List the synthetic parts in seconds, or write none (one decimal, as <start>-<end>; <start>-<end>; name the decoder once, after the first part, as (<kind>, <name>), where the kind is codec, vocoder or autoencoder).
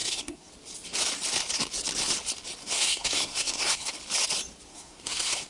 0.0-0.5 (codec, SNAC); 2.6-3.9; 4.7-5.5